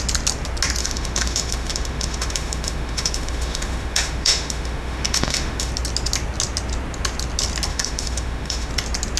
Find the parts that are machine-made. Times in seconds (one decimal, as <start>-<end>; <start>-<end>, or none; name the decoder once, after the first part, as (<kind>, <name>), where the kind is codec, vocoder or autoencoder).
0.8-5.7 (autoencoder, DAC-VAE); 7.7-8.7